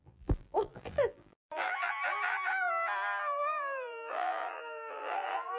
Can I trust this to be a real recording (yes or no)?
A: no